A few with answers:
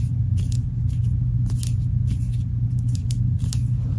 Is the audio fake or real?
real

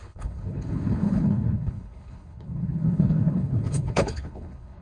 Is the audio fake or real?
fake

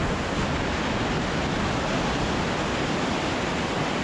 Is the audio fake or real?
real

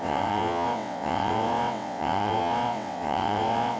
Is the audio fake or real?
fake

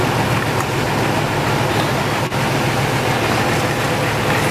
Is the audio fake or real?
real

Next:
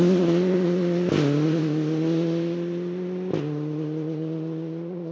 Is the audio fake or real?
real